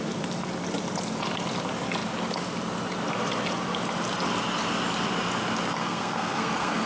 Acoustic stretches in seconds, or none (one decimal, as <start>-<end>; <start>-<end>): 0.0-5.8